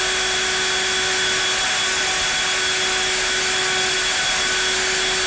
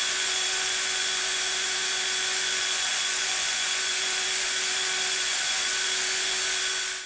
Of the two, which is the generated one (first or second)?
second